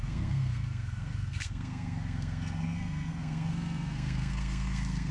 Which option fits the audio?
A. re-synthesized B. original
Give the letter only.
A